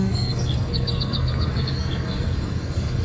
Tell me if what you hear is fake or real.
fake